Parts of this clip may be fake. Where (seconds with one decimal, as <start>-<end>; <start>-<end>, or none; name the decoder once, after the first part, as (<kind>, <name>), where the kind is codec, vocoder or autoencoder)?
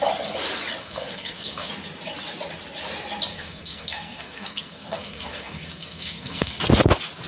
0.8-1.7 (codec, SNAC); 3.3-6.6